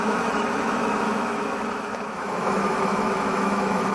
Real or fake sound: fake